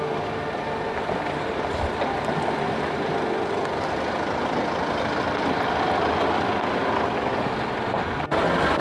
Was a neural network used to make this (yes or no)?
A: no